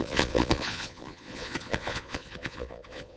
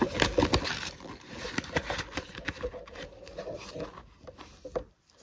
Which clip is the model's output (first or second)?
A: first